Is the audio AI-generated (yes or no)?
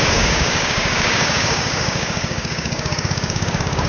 yes